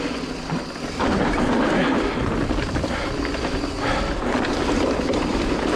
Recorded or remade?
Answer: recorded